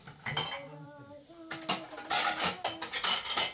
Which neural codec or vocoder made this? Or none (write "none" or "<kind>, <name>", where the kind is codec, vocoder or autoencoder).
none